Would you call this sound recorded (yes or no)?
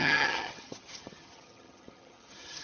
no